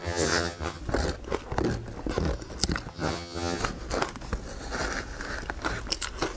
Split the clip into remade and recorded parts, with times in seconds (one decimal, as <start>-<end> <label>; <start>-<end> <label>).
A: 0.0-0.8 remade; 0.8-2.9 recorded; 2.9-3.6 remade; 3.6-6.4 recorded